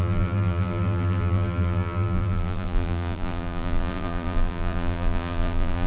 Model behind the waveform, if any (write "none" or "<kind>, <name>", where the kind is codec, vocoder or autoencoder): vocoder, BigVGAN v2